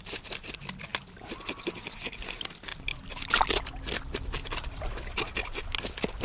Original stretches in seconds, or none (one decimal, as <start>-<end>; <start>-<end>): 0.0-6.2